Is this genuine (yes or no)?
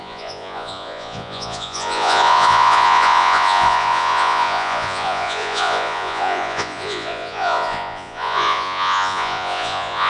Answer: no